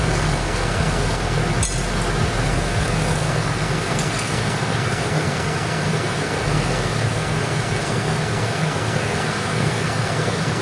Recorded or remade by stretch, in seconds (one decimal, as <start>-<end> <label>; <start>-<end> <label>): 0.0-1.4 remade; 1.4-2.5 recorded; 2.5-10.6 remade